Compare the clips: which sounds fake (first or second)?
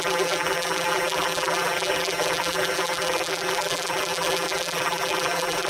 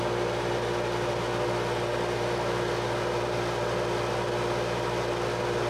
first